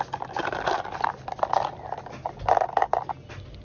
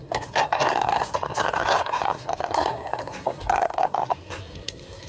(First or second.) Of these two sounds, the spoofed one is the second